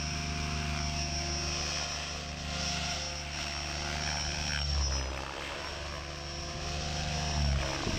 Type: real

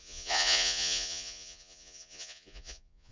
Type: fake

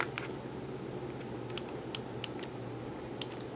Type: real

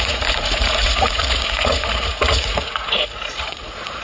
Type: fake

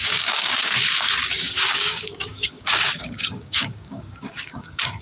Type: fake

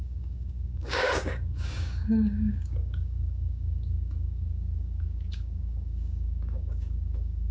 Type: fake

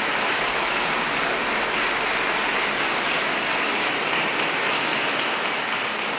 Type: real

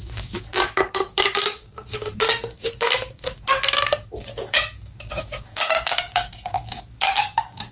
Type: fake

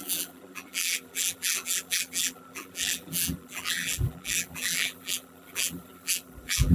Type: fake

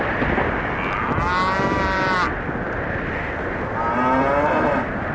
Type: real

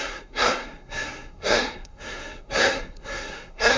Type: fake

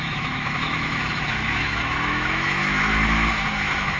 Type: fake